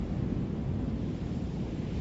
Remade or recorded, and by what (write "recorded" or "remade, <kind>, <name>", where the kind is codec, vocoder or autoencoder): remade, vocoder, BigVGAN v2